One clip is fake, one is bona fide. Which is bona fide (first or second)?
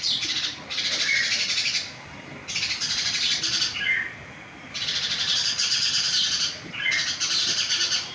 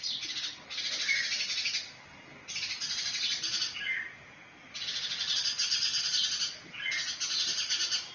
second